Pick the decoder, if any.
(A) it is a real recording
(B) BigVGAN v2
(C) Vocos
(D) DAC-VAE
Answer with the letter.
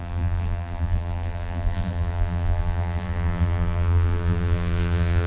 B